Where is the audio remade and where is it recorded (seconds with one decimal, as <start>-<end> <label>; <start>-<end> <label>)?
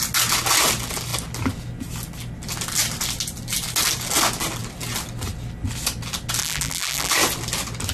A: 0.0-6.4 recorded; 6.4-7.1 remade; 7.1-7.9 recorded